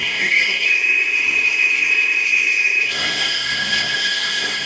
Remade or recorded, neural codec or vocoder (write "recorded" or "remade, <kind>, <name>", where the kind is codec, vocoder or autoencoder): remade, codec, SNAC